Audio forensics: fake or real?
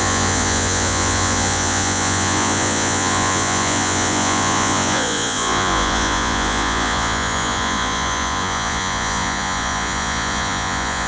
fake